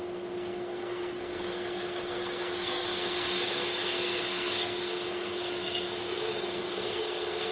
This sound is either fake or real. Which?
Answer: fake